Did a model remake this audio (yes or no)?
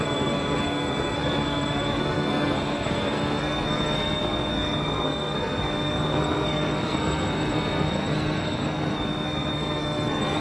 yes